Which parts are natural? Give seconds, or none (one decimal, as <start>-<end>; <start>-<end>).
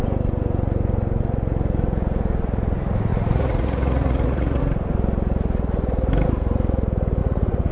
0.0-3.1; 4.6-7.2